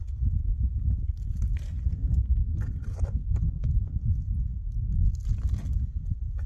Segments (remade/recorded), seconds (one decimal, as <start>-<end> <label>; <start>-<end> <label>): 0.0-2.0 recorded; 2.0-2.6 remade; 2.6-3.2 recorded; 3.2-4.0 remade; 4.0-6.5 recorded